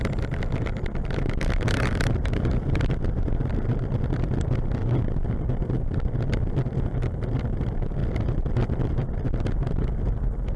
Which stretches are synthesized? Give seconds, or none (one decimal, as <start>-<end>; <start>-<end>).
0.0-4.8; 5.6-10.6